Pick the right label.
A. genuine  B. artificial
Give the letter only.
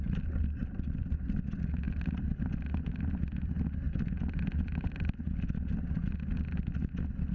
A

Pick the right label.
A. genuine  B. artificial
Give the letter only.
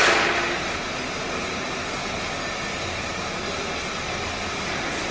A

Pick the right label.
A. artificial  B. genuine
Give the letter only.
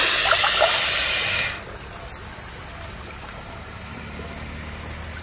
B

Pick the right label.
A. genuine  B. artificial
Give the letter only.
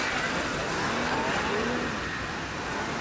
A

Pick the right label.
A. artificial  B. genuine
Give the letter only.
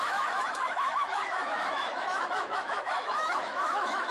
A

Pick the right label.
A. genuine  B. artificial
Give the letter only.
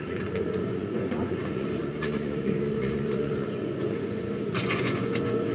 B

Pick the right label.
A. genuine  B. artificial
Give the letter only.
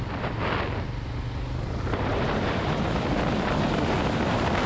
A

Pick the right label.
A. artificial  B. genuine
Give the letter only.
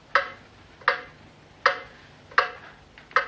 B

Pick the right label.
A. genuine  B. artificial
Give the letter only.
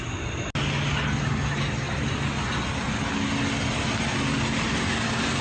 A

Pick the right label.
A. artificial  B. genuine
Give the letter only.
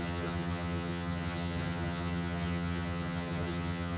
A